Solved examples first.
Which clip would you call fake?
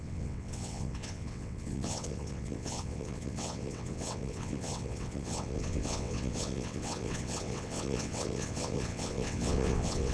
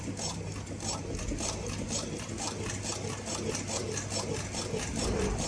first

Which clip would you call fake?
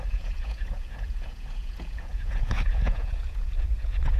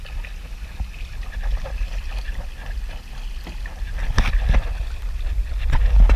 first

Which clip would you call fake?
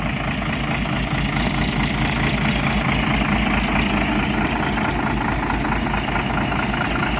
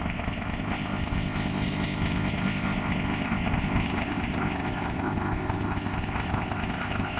second